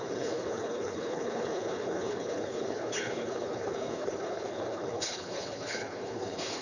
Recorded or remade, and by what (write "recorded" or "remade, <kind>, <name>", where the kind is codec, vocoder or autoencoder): remade, codec, HILCodec